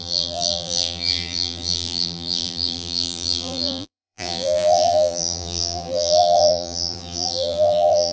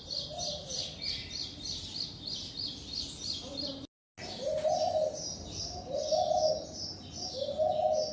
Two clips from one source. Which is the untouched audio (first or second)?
second